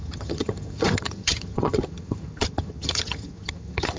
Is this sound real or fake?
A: fake